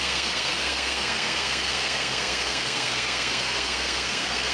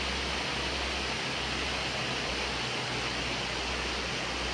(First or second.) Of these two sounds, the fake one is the first